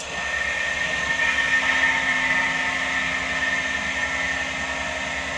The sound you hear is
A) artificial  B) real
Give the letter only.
B